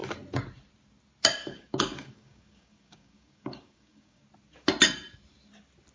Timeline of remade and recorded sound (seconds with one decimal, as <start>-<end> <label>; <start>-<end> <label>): 0.0-1.4 recorded; 1.4-4.2 remade; 4.2-5.9 recorded

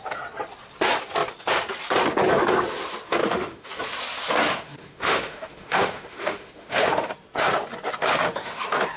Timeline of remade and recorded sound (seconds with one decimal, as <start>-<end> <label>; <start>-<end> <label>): 0.0-3.2 recorded; 3.2-3.7 remade; 3.7-4.5 recorded; 4.5-7.1 remade; 7.1-8.1 recorded; 8.1-8.6 remade; 8.6-9.0 recorded

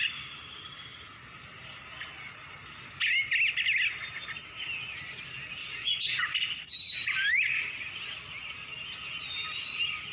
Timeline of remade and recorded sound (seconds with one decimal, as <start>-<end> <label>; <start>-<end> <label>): 0.0-5.6 recorded; 5.6-6.2 remade; 6.2-10.1 recorded

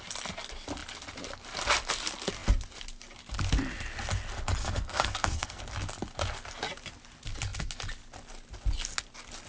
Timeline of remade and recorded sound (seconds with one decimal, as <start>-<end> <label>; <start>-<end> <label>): 0.0-4.6 recorded; 4.6-5.6 remade; 5.6-9.5 recorded

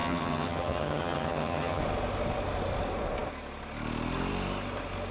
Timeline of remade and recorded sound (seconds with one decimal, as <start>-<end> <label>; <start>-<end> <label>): 0.0-1.8 remade; 1.8-5.1 recorded

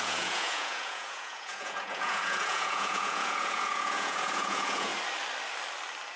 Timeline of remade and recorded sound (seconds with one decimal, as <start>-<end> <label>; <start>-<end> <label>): 0.0-4.9 remade; 4.9-6.2 recorded

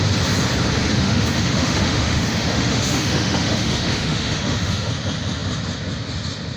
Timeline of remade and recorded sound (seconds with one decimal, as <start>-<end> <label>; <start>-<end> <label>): 0.0-0.9 recorded; 0.9-4.9 remade; 4.9-6.6 recorded